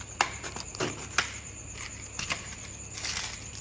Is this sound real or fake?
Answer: real